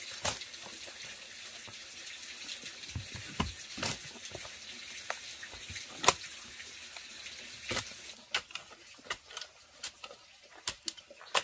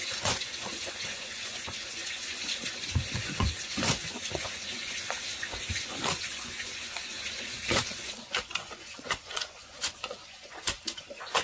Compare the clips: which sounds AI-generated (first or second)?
second